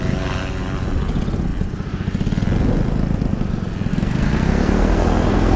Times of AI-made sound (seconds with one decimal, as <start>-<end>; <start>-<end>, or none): 3.9-5.6

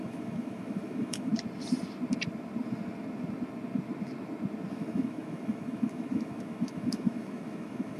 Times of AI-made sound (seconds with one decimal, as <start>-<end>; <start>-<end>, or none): 0.0-1.3; 4.7-8.0

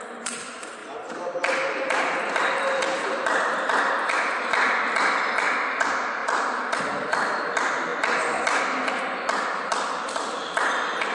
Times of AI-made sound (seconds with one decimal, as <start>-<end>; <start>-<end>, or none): 0.8-4.1; 6.2-6.8

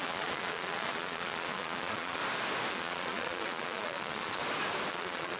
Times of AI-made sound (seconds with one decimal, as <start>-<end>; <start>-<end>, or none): 0.0-2.2; 2.7-4.4; 4.9-5.4

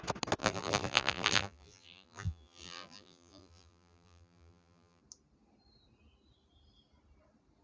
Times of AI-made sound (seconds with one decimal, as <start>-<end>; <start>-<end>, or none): 0.4-5.0

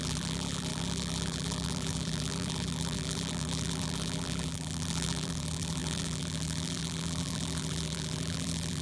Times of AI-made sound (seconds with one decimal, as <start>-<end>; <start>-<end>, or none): 0.0-8.8

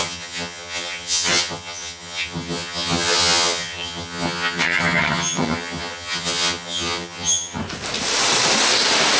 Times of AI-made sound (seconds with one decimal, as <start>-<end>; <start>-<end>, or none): 0.0-7.6